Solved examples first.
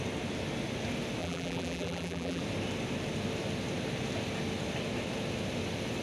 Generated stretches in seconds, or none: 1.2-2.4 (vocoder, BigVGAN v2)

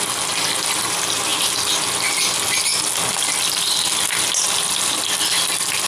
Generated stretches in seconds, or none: 0.0-1.3 (vocoder, BigVGAN v2); 4.8-5.9

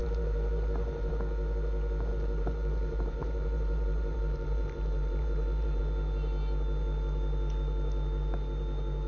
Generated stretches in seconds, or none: 0.0-1.1 (vocoder, BigVGAN v2); 2.1-5.8